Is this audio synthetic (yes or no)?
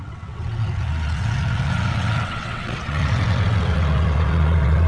yes